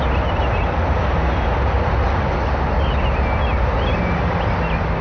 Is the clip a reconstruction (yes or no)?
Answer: no